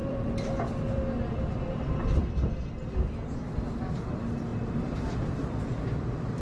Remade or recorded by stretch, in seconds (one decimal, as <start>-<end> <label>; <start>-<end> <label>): 0.0-2.2 remade; 2.2-2.8 recorded; 2.8-6.4 remade